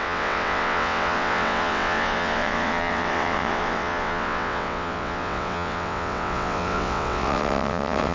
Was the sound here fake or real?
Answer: fake